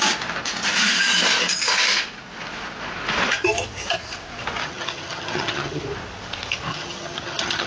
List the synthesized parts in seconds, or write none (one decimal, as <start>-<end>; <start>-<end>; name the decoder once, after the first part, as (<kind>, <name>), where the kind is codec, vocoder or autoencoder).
4.6-5.8 (vocoder, HiFi-GAN); 6.7-7.7